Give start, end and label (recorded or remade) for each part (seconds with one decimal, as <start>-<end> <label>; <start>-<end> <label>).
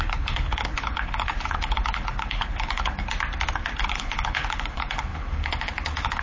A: 0.0-3.0 remade; 3.0-3.8 recorded; 3.8-6.2 remade